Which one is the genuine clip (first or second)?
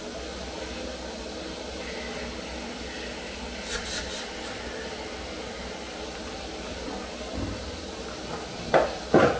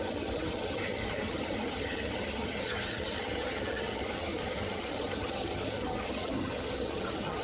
first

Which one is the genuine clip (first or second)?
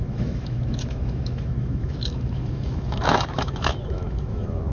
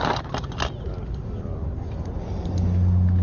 second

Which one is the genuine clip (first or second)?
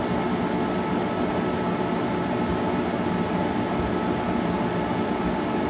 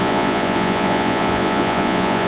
first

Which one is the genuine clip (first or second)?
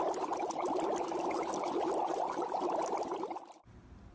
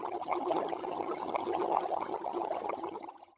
first